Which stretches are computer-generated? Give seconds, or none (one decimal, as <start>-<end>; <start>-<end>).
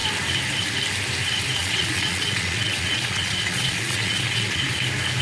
1.6-4.7